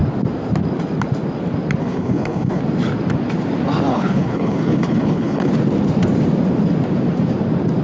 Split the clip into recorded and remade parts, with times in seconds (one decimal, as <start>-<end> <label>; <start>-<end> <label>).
0.0-1.8 recorded; 1.8-2.6 remade; 2.6-3.9 recorded; 3.9-5.5 remade; 5.5-7.8 recorded